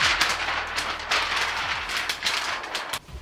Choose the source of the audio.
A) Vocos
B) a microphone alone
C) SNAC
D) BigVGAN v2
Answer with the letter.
D